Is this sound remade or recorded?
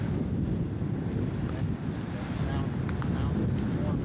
recorded